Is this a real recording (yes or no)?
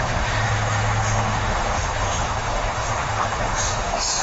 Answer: no